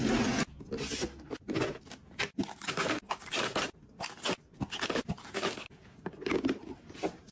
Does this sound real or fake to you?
real